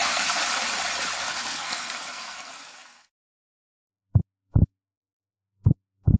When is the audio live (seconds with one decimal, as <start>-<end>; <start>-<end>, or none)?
0.4-1.2